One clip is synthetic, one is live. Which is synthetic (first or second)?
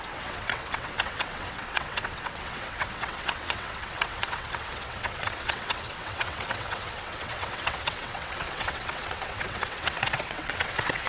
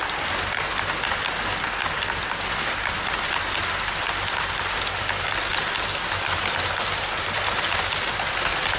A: first